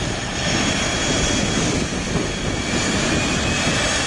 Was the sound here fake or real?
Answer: real